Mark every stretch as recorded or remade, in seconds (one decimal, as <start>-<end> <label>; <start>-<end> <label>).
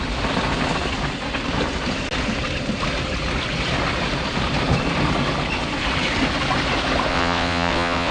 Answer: 0.0-7.1 recorded; 7.1-8.1 remade